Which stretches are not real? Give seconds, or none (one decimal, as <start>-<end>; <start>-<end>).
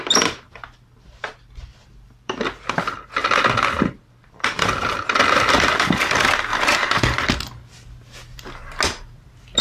0.0-6.5